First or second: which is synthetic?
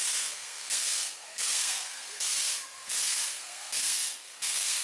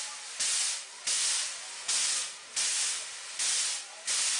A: first